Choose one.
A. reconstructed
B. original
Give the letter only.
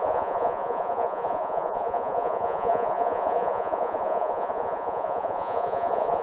A